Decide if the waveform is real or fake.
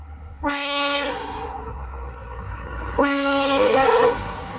fake